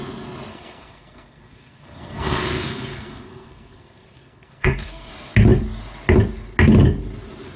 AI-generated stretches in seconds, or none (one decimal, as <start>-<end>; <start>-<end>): 0.5-5.1